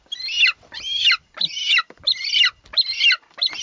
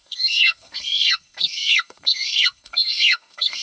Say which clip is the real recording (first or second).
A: first